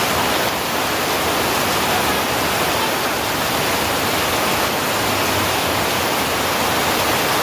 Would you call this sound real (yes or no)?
yes